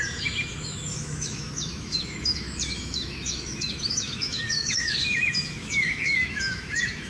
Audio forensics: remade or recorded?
remade